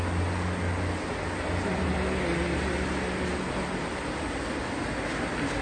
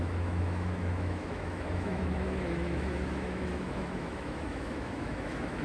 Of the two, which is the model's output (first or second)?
second